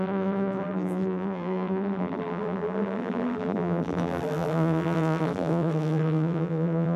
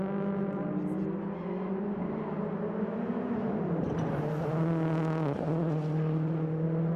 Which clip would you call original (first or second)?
second